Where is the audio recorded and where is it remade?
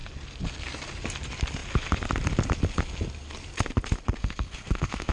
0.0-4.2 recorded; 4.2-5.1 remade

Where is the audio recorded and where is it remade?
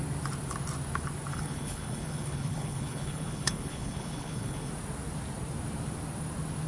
0.0-1.3 recorded; 1.3-4.7 remade; 4.7-6.7 recorded